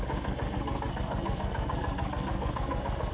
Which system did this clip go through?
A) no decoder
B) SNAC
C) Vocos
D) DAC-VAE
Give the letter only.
B